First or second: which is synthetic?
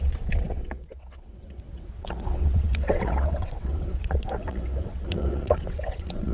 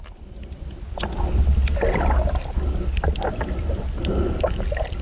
first